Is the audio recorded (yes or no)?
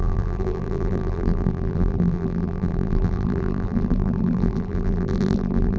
no